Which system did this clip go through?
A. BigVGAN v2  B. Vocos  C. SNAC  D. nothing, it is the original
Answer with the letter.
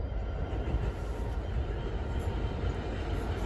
D